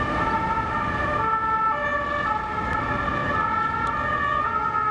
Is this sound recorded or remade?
recorded